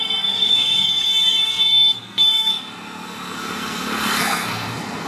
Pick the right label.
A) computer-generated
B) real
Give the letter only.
A